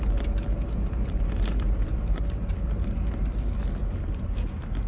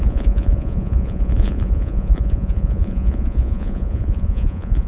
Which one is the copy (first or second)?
second